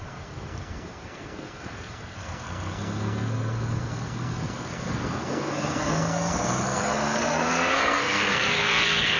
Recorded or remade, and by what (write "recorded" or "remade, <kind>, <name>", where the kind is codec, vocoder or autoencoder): remade, codec, SNAC